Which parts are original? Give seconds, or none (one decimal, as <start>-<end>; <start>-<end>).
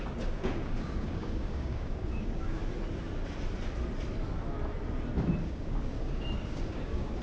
2.6-5.4